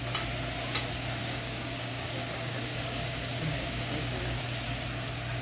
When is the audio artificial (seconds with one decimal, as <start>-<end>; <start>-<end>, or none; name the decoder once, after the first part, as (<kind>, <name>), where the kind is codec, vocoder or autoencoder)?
1.2-4.4 (codec, DAC)